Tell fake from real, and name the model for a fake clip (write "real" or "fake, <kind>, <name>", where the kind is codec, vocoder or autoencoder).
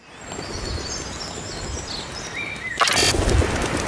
real